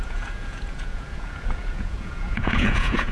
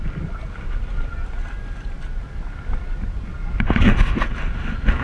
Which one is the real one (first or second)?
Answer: second